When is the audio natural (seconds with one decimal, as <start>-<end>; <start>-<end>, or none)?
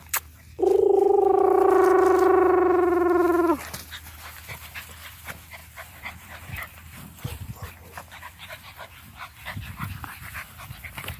0.0-5.6; 7.7-11.2